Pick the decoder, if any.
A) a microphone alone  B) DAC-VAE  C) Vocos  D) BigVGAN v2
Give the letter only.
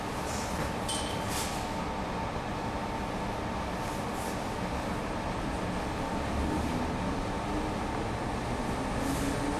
A